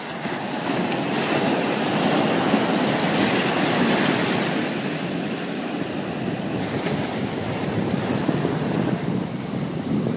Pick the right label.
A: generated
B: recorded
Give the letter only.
B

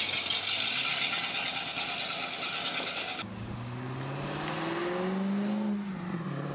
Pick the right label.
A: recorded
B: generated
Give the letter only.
A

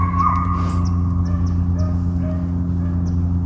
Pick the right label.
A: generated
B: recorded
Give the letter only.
B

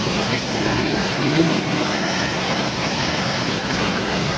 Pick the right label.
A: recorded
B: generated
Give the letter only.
B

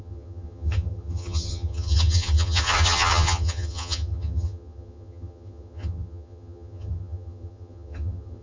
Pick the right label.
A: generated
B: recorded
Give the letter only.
A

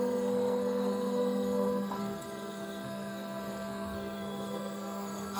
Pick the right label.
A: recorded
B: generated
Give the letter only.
B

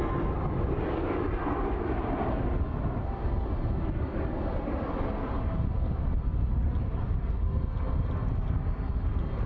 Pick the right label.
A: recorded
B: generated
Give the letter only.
A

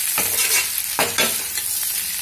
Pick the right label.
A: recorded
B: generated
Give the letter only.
A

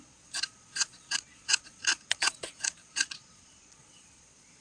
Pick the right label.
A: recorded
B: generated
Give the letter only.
B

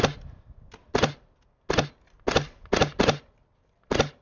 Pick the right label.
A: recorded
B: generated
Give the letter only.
A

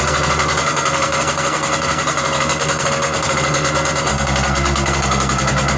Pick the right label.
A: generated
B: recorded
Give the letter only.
A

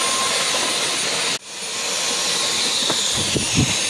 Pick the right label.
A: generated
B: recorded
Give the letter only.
B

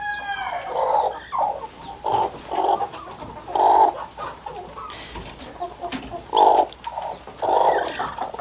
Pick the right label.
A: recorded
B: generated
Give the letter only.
A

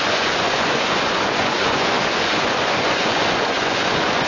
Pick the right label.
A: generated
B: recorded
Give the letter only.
A